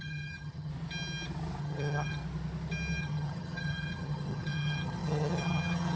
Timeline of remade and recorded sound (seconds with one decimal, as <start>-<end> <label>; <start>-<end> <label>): 0.0-0.7 remade; 0.7-1.6 recorded; 1.6-2.2 remade; 2.2-3.0 recorded; 3.0-6.0 remade